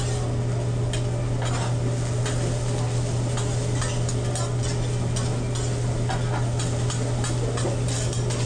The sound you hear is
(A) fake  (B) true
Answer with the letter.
B